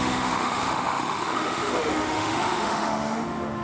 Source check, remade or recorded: remade